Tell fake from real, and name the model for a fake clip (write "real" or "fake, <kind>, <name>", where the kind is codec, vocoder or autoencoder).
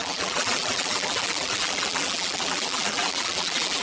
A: fake, vocoder, BigVGAN v2